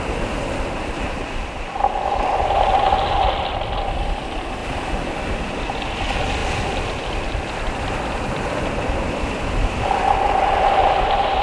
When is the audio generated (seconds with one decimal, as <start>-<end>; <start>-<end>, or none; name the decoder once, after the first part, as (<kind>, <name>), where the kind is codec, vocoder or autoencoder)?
4.6-5.6 (vocoder, BigVGAN v2); 10.8-11.4